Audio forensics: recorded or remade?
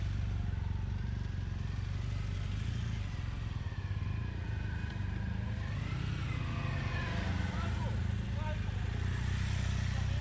recorded